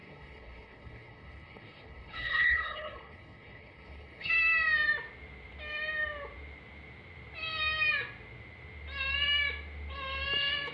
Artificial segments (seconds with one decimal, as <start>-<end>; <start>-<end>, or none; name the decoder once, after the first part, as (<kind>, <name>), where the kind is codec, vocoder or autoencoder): 0.0-4.3 (codec, HILCodec)